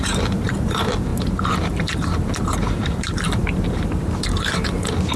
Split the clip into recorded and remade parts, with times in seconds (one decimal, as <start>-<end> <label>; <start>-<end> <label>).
0.0-5.2 remade